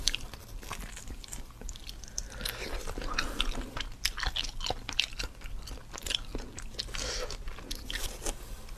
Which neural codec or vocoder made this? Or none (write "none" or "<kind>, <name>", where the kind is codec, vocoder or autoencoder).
none